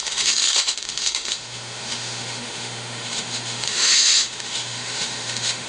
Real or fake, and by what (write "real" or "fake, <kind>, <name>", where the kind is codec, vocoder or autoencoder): fake, autoencoder, DAC-VAE